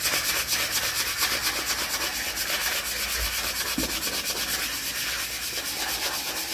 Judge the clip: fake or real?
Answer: real